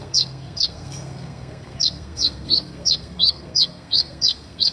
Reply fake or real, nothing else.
fake